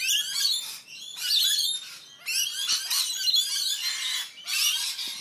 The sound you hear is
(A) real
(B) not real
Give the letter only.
A